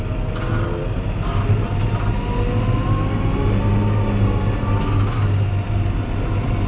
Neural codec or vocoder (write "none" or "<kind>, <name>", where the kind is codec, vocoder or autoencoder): none